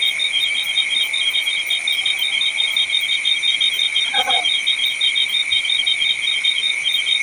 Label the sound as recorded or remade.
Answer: recorded